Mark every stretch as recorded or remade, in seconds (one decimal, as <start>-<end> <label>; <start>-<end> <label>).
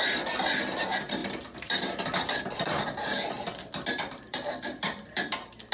0.0-1.2 recorded; 1.2-2.3 remade; 2.3-5.7 recorded